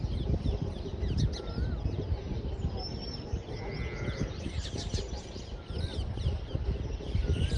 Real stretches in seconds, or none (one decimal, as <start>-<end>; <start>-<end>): 0.0-7.6